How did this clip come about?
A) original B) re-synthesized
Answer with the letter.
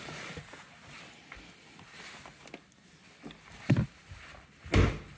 A